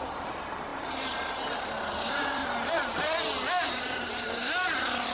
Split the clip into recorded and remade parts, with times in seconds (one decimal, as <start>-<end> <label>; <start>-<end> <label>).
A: 0.0-2.4 remade; 2.4-3.6 recorded; 3.6-5.1 remade